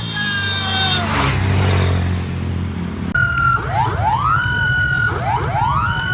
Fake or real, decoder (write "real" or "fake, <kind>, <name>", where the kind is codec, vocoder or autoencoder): real